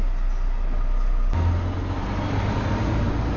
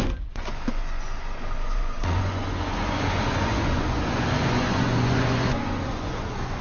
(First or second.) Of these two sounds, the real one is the first